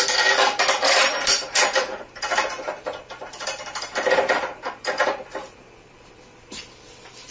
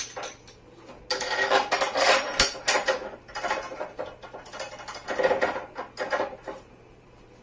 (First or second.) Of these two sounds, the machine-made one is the first